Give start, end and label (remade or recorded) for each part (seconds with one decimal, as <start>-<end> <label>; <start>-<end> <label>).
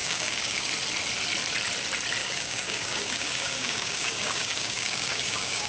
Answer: 0.0-0.7 remade; 0.7-2.2 recorded; 2.2-5.7 remade